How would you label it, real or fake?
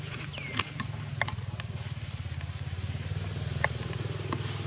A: real